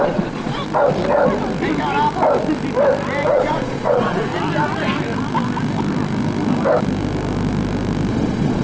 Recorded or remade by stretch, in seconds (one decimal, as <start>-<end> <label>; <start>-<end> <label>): 0.0-0.6 remade; 0.6-3.3 recorded; 3.3-4.3 remade; 4.3-8.1 recorded; 8.1-8.6 remade